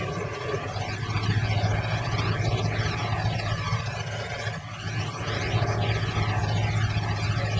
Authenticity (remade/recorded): recorded